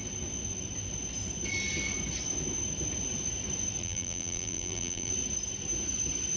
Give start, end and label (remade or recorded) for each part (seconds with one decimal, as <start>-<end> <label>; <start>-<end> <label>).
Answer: 0.0-3.8 recorded; 3.8-5.1 remade; 5.1-6.4 recorded